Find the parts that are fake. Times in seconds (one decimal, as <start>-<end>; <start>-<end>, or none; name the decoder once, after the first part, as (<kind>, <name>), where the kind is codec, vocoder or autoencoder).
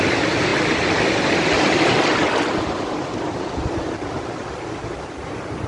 none